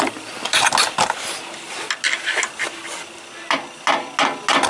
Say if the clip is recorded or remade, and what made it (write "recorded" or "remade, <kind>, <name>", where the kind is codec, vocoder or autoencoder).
recorded